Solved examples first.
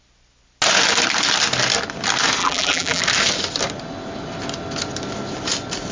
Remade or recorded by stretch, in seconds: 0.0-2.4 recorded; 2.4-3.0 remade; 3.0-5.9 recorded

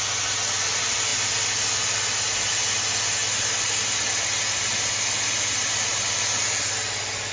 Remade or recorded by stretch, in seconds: 0.0-7.3 recorded

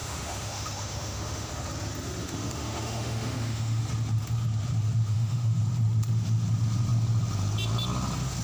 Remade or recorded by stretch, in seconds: 0.0-1.5 remade; 1.5-2.2 recorded; 2.2-3.8 remade; 3.8-5.1 recorded; 5.1-5.6 remade; 5.6-8.4 recorded

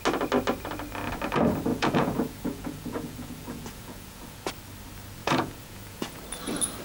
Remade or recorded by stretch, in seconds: 0.0-1.7 recorded; 1.7-4.5 remade; 4.5-5.2 recorded; 5.2-6.2 remade; 6.2-6.8 recorded

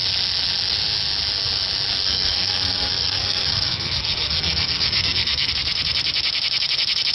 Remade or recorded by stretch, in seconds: 0.0-1.9 recorded; 1.9-5.5 remade; 5.5-7.1 recorded

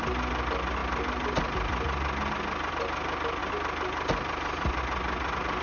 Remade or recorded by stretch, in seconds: 0.0-5.6 recorded